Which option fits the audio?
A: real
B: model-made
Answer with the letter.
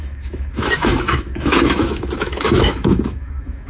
B